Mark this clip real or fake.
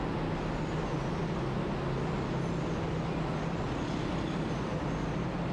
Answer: real